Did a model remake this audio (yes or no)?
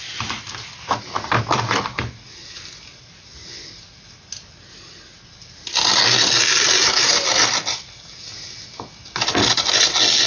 no